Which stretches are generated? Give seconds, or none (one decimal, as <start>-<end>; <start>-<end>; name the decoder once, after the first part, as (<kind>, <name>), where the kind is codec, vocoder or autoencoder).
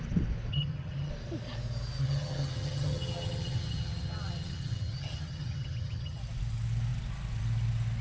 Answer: 0.5-1.1 (vocoder, HiFi-GAN); 2.0-6.2